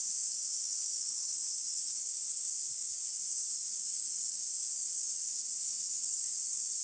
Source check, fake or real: fake